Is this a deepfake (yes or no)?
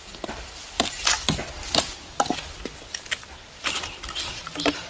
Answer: no